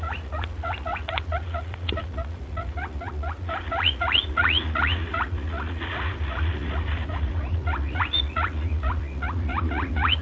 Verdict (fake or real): fake